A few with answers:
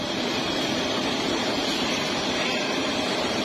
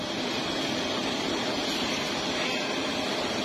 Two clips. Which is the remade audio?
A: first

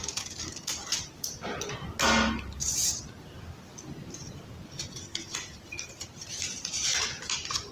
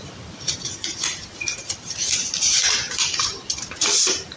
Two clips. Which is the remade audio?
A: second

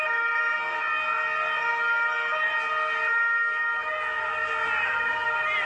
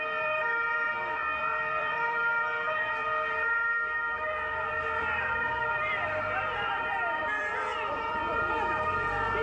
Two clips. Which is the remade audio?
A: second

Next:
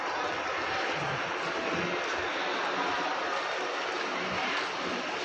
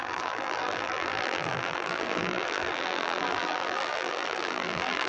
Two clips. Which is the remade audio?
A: second